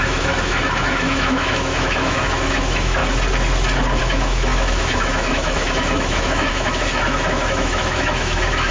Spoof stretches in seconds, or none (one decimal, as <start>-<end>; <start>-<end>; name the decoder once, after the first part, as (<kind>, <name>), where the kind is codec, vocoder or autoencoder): 0.0-3.0 (autoencoder, DAC-VAE); 4.0-8.7